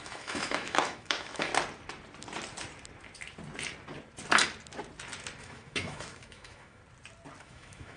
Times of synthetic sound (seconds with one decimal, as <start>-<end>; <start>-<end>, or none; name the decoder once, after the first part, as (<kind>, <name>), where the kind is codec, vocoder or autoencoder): 0.0-1.5 (autoencoder, DAC-VAE); 5.4-6.8; 7.4-8.0